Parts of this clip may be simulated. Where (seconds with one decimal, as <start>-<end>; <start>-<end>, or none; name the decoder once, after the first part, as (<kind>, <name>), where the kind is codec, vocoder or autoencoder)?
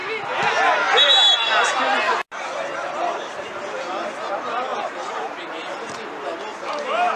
none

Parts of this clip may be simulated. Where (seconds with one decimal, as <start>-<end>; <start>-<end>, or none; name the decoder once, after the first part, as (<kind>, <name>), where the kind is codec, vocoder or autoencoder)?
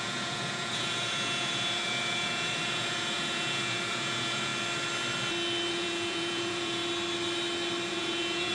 0.0-4.5 (vocoder, Vocos); 5.7-6.8; 7.9-8.5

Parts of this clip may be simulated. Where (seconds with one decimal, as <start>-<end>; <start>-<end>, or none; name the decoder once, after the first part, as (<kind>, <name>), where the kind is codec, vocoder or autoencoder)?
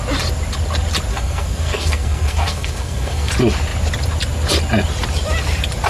1.1-3.3 (codec, SNAC)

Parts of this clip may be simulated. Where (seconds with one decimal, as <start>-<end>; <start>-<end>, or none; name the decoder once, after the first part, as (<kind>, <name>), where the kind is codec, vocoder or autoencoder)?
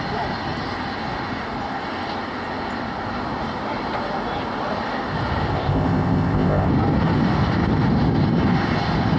5.5-6.7 (codec, ZipCodec)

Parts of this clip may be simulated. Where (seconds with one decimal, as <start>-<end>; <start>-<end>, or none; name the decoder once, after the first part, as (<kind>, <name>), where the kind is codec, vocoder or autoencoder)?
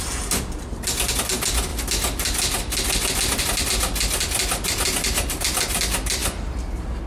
none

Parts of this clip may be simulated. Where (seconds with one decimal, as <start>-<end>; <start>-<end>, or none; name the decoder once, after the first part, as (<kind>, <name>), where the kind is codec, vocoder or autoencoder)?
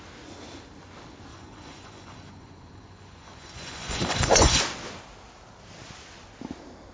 1.3-4.6 (vocoder, Vocos)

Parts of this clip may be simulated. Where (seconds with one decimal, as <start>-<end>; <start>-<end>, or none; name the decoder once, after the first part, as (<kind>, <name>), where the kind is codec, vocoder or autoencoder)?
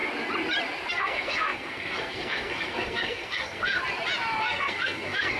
0.9-3.8 (codec, SNAC); 4.4-5.4